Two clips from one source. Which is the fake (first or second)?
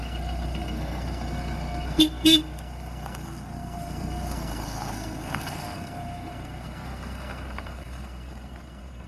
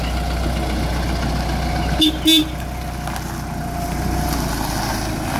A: first